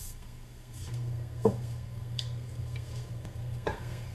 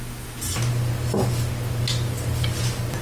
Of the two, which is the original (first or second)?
second